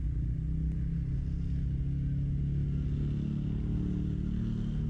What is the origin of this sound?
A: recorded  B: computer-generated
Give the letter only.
A